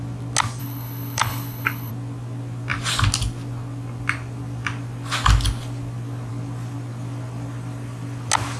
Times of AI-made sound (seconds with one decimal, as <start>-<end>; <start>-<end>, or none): 0.6-1.9